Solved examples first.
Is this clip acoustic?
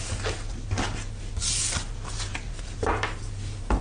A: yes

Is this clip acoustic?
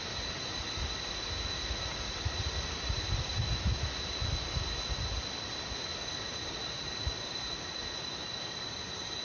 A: yes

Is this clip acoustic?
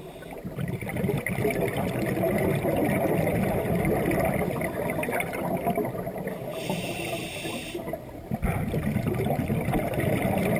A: yes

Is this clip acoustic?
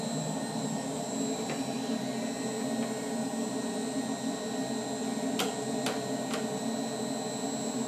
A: yes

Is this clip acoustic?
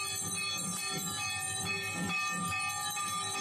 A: yes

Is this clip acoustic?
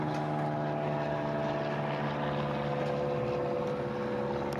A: yes